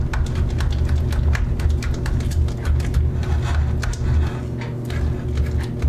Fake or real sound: real